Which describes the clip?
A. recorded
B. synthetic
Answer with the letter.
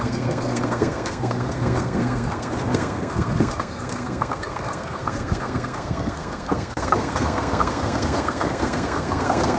B